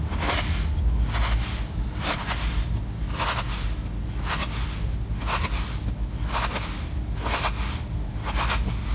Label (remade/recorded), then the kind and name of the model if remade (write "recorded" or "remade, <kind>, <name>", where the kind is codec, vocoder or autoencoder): recorded